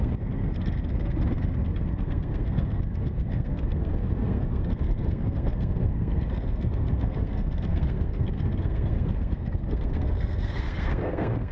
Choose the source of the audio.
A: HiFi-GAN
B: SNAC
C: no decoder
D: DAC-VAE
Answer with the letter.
B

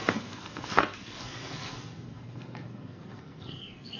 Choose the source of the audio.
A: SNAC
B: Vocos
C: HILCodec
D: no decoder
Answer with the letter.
A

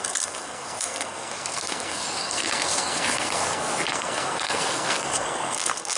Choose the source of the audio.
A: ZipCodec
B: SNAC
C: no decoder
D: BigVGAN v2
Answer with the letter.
B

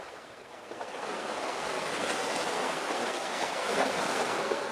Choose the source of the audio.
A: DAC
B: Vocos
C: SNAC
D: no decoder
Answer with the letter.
C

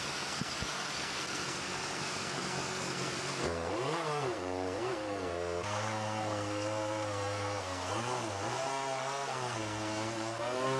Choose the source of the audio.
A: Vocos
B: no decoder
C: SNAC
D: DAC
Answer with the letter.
C